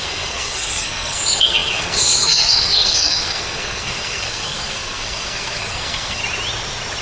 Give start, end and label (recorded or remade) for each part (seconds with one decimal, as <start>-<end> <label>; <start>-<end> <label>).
0.0-6.2 remade; 6.2-7.0 recorded